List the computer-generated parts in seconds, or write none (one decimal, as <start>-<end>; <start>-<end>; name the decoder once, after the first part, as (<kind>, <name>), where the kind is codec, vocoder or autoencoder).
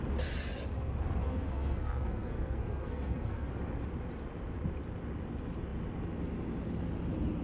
1.2-3.5 (codec, SNAC)